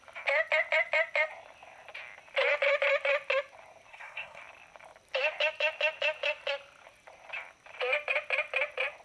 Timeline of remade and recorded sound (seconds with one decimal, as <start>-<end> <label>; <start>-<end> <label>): 0.0-3.9 recorded; 3.9-4.4 remade; 4.4-9.0 recorded